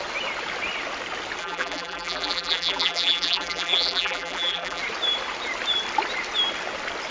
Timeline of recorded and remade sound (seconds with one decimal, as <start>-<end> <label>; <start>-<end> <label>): 0.0-1.4 recorded; 1.4-4.8 remade; 4.8-7.1 recorded